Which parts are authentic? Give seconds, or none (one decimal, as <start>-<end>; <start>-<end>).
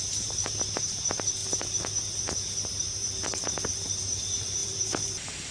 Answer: 1.4-2.2; 3.0-3.7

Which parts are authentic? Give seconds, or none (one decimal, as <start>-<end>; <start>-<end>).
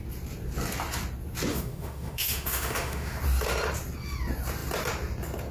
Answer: 0.0-1.5; 3.2-5.5